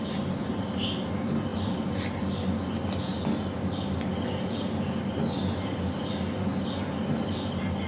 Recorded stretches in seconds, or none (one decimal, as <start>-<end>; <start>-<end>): 0.0-7.9